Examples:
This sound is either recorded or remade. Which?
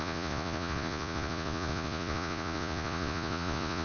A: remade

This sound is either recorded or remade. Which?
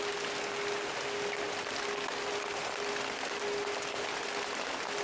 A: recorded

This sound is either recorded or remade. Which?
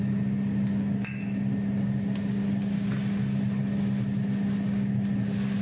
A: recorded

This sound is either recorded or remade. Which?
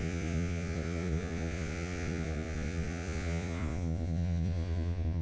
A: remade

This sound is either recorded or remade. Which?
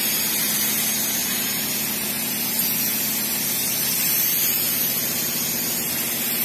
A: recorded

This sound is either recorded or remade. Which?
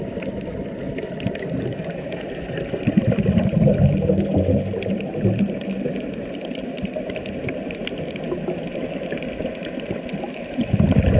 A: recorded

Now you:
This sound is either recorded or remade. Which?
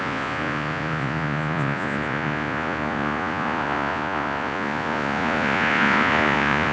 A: remade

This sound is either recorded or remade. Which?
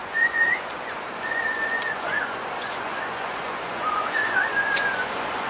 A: remade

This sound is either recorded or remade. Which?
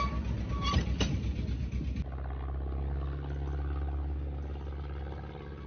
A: recorded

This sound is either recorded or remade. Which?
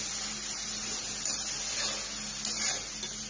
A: recorded